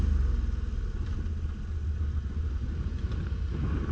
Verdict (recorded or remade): recorded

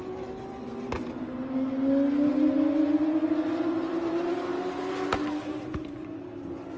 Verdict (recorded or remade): recorded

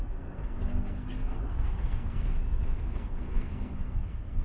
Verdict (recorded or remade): remade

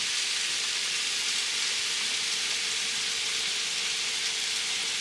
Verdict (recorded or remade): recorded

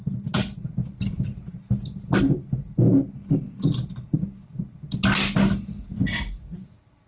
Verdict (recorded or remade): recorded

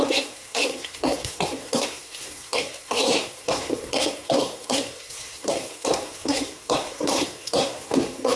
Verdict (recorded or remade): remade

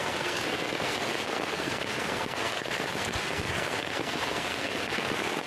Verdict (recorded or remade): remade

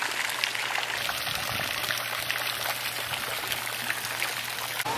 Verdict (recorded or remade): recorded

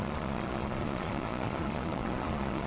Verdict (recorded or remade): remade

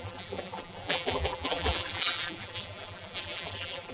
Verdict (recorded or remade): remade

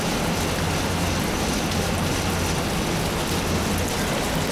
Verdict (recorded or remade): recorded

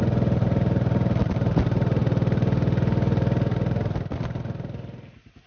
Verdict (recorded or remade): recorded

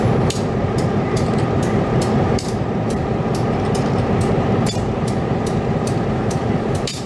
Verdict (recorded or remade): remade